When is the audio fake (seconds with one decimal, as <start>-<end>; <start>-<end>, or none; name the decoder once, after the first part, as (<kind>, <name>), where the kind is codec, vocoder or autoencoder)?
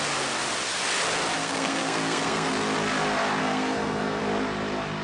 1.4-2.5 (codec, SNAC); 3.4-4.2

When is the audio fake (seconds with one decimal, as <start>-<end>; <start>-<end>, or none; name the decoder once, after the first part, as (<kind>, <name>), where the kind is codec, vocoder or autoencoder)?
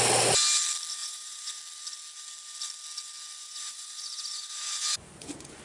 1.0-1.6 (vocoder, Vocos); 3.4-5.6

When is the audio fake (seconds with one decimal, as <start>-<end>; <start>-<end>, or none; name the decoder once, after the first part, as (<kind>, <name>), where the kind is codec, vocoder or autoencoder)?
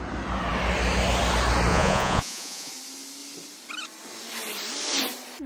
1.7-2.7 (vocoder, Vocos)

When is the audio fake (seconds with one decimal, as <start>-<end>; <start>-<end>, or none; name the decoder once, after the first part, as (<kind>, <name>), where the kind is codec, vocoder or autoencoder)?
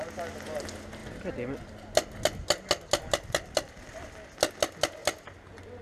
none